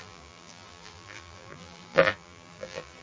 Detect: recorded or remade remade